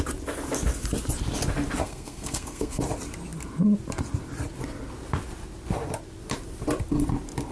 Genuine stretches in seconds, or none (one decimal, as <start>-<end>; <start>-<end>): 0.0-1.8; 2.8-7.5